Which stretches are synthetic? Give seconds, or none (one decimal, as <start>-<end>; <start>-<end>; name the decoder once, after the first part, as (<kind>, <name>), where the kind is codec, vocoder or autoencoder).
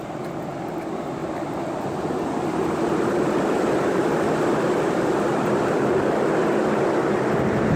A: none